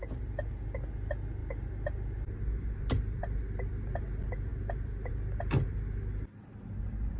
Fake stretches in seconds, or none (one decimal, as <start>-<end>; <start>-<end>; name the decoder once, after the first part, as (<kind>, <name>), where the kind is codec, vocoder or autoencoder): none